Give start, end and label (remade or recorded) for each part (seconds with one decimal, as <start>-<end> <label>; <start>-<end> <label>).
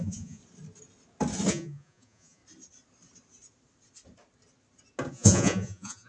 0.0-0.4 remade; 0.4-1.5 recorded; 1.5-2.4 remade; 2.4-5.1 recorded; 5.1-6.1 remade